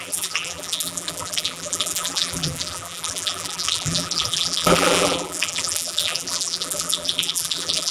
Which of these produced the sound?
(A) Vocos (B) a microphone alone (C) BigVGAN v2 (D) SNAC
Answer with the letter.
C